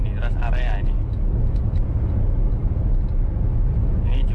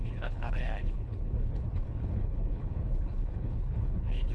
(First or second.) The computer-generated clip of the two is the second